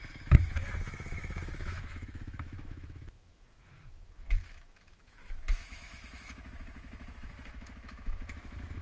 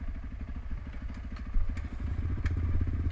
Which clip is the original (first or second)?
second